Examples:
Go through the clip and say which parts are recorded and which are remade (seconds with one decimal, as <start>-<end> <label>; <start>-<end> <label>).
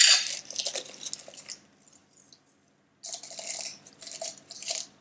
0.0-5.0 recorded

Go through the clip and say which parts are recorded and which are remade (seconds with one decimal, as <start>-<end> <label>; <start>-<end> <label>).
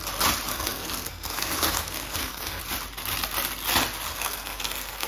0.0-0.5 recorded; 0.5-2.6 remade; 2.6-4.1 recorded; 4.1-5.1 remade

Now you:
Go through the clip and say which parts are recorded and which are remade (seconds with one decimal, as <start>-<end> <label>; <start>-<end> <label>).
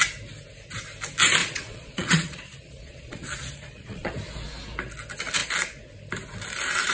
0.0-1.4 recorded; 1.4-4.1 remade; 4.1-6.9 recorded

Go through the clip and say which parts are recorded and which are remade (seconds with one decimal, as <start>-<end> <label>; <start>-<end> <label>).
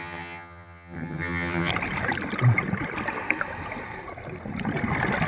0.0-1.7 remade; 1.7-5.3 recorded